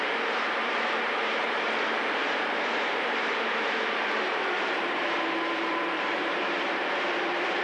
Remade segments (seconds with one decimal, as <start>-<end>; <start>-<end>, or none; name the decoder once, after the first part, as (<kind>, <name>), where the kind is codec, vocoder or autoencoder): 0.0-7.6 (vocoder, BigVGAN v2)